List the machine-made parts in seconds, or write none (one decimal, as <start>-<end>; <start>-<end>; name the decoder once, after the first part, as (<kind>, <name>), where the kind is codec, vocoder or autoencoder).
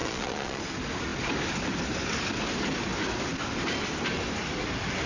0.0-0.6 (vocoder, Vocos)